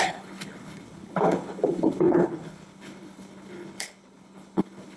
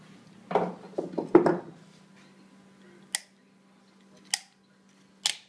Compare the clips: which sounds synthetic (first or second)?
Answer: first